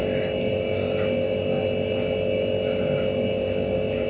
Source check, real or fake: real